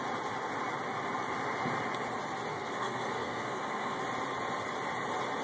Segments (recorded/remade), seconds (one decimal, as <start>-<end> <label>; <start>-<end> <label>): 0.0-2.5 recorded; 2.5-4.0 remade; 4.0-5.4 recorded